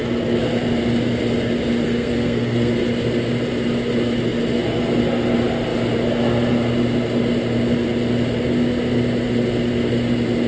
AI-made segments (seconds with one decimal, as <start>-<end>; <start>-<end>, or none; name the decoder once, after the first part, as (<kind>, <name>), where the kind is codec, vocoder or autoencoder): 1.8-2.7 (codec, SNAC)